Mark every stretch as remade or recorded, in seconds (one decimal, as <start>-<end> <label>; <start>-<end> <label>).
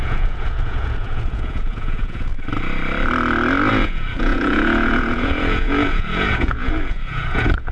0.0-2.3 remade; 2.3-3.7 recorded; 3.7-7.7 remade